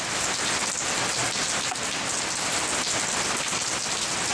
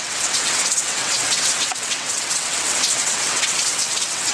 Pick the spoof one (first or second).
second